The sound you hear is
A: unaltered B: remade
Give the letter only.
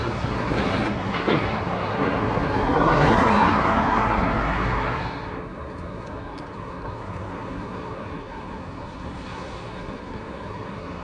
B